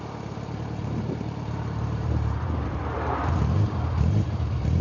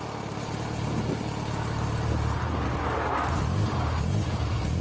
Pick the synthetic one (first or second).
first